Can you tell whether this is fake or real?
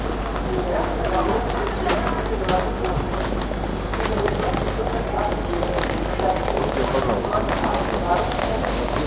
real